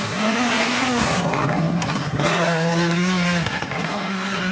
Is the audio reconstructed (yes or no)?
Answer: yes